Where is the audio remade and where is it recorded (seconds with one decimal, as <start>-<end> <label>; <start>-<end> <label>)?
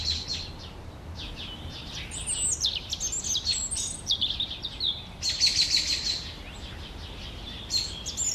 0.0-8.3 recorded